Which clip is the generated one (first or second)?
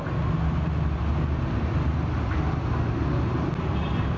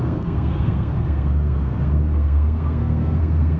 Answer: second